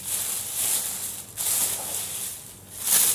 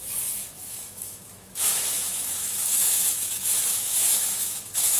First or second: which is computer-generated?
second